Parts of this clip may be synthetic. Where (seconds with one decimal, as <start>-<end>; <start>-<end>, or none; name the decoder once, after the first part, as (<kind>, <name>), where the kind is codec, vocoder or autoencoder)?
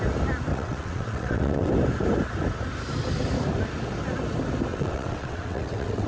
0.5-1.7 (vocoder, WaveNeXt); 4.7-6.1